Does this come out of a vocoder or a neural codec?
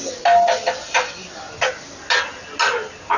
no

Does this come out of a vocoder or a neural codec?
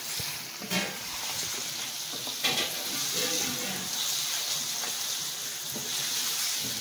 no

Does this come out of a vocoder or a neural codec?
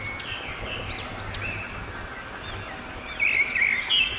no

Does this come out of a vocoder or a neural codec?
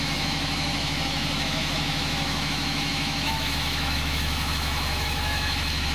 yes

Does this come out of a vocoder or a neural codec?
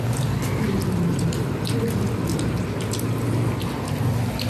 no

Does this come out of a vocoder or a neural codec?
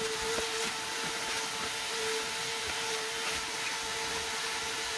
no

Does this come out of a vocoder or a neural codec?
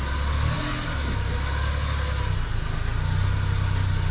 no